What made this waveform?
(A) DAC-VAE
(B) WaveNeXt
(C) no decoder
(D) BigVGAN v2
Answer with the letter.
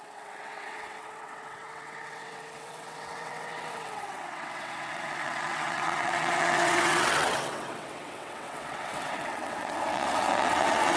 B